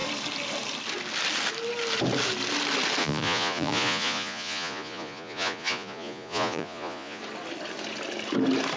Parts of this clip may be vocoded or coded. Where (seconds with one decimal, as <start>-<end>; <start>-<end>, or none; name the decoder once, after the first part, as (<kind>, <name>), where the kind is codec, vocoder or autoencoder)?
3.0-7.2 (vocoder, Vocos)